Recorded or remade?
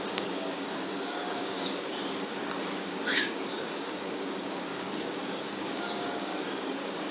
remade